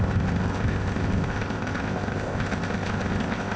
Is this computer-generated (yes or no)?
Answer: yes